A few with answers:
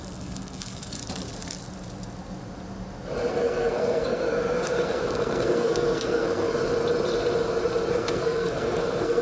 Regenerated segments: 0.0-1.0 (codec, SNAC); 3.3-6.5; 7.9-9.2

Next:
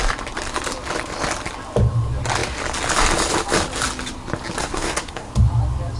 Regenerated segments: 4.6-5.3 (codec, SNAC)

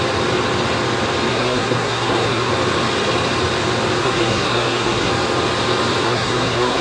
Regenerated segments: 1.3-2.5 (codec, SNAC); 4.0-5.1; 6.0-6.8

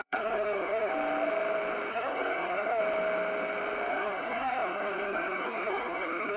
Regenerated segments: 0.0-0.9 (codec, SNAC); 1.9-2.8; 3.9-6.4

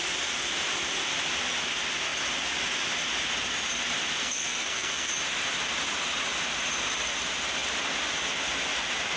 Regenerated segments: 4.2-5.1 (codec, SNAC)

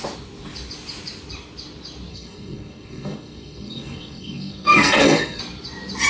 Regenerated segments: 2.1-5.4 (codec, SNAC)

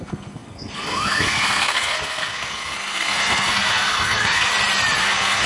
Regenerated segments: 0.0-4.5 (codec, SNAC); 5.0-5.5

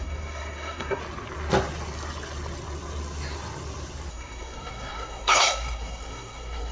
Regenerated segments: 0.0-1.0 (codec, SNAC); 4.1-6.7